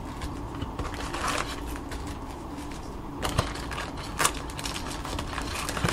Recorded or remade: recorded